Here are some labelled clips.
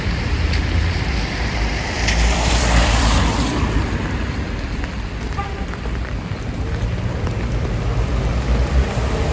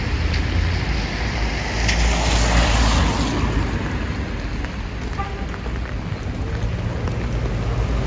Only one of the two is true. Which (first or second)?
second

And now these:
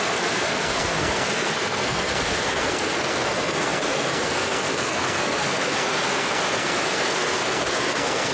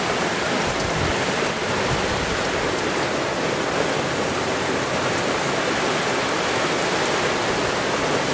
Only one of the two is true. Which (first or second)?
second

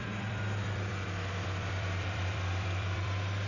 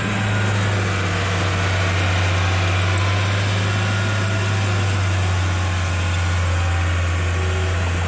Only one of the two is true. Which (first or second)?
second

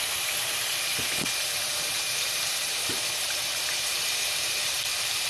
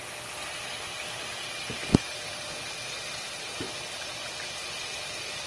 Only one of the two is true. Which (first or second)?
second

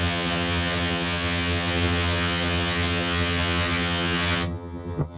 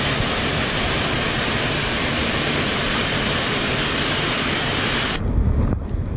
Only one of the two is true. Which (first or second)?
second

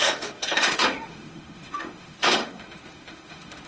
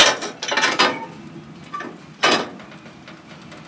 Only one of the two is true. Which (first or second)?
second